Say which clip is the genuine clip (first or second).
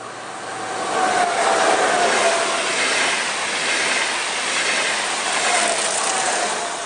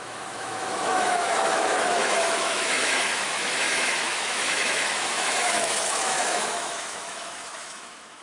first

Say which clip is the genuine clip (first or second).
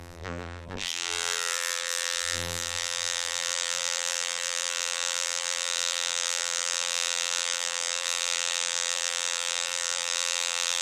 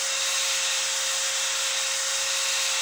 second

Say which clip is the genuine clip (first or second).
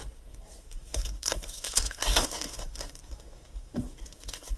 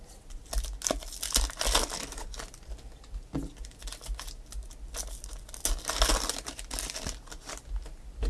second